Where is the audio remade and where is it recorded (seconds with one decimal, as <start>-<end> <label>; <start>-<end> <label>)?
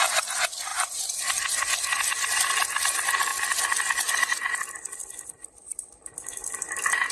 0.0-0.7 recorded; 0.7-1.2 remade; 1.2-7.1 recorded